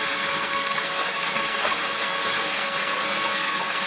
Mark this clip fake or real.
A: fake